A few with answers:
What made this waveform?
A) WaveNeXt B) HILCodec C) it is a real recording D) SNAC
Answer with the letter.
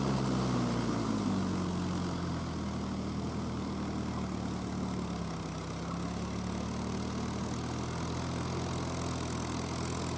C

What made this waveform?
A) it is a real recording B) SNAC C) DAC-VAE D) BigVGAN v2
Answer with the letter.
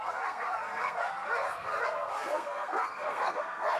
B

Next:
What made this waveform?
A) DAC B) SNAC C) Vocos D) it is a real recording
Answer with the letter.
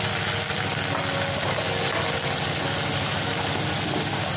D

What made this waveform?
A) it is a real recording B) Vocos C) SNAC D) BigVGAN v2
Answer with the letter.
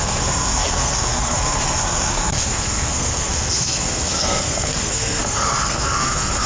C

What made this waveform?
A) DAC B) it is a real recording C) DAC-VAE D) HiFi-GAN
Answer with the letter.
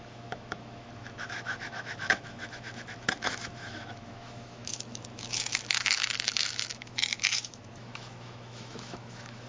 C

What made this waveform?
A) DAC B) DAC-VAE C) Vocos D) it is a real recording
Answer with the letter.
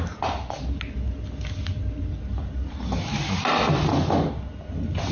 D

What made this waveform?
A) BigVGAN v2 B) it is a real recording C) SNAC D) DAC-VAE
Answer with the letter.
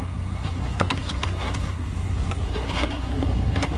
C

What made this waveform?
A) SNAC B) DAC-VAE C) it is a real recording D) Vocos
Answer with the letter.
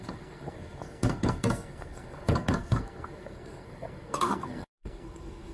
A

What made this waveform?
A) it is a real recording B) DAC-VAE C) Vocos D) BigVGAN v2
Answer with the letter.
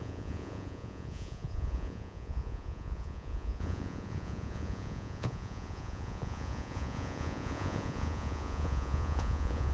C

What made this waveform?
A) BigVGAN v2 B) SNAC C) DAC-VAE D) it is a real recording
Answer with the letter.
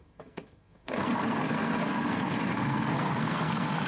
B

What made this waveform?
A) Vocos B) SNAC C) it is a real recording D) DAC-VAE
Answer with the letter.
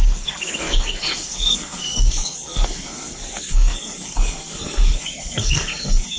B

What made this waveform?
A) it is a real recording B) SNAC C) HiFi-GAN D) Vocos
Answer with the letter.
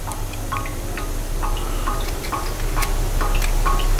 A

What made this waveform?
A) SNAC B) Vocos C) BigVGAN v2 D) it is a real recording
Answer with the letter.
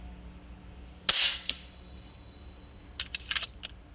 D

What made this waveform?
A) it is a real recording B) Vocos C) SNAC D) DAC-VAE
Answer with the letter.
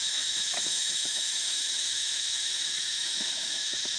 D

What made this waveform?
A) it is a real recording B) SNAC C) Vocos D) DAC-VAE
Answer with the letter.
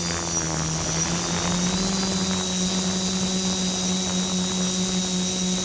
A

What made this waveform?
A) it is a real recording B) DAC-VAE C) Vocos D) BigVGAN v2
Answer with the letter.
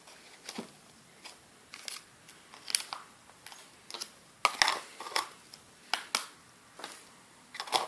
A